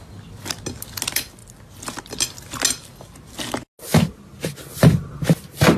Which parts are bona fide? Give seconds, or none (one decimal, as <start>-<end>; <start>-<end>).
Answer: 0.0-5.8